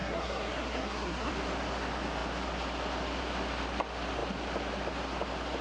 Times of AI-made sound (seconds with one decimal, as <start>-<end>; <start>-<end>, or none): 0.0-1.3